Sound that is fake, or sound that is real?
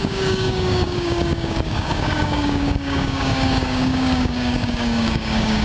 fake